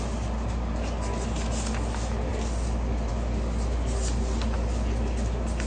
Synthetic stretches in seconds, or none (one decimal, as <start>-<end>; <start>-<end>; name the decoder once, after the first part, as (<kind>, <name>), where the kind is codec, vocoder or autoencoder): none